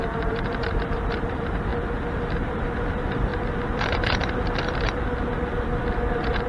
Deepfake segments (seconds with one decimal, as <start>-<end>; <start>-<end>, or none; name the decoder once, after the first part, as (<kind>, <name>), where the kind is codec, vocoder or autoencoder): 0.0-1.7 (vocoder, BigVGAN v2); 2.3-3.3; 6.1-6.5